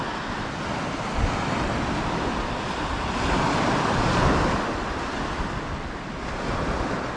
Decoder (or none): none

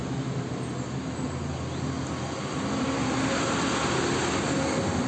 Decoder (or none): none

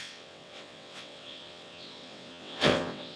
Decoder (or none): vocoder, WaveNeXt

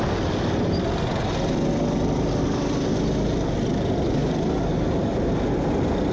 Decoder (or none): none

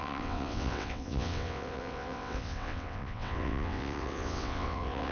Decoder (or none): vocoder, WaveNeXt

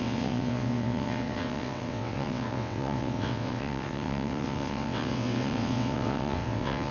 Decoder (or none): vocoder, WaveNeXt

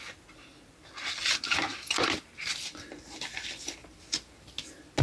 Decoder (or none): none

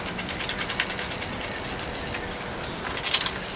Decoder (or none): none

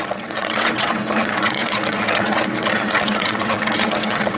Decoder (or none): vocoder, WaveNeXt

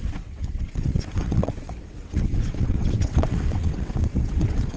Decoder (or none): vocoder, WaveNeXt